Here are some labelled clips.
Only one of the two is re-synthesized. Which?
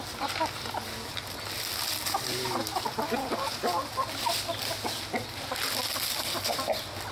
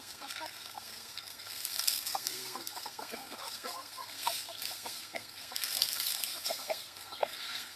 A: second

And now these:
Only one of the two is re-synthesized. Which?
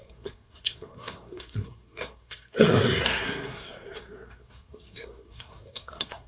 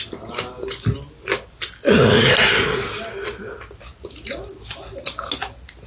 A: first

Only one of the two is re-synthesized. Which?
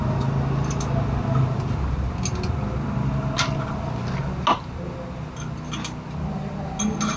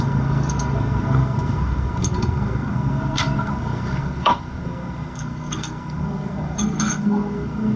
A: second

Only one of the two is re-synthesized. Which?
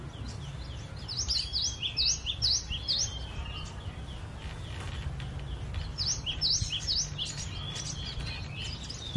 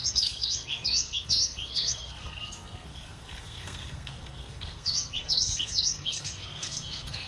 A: second